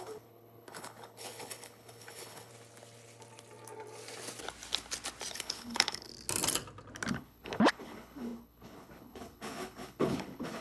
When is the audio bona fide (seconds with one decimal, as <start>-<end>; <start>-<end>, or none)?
2.5-5.3; 6.1-7.1